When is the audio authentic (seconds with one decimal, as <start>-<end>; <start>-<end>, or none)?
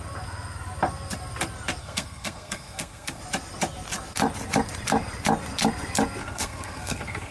0.0-1.8; 3.2-6.2